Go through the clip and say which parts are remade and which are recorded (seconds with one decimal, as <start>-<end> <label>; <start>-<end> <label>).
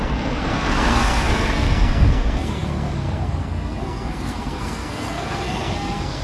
0.0-6.2 remade